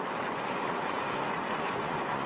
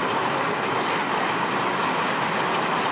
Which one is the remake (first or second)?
first